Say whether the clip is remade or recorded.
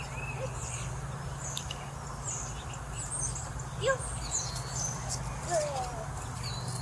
recorded